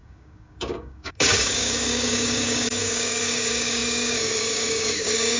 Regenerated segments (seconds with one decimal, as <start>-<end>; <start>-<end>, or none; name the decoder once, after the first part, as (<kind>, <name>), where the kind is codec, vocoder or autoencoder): 0.0-5.4 (codec, DAC)